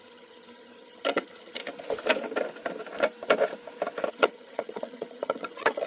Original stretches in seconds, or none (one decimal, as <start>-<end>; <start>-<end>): 1.6-4.1

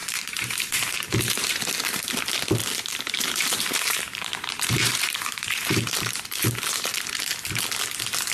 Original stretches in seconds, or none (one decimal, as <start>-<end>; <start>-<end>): 1.6-2.6; 6.9-8.3

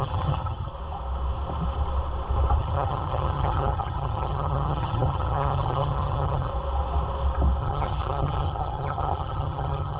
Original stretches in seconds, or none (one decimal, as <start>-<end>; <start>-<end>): 0.7-2.6; 6.5-7.6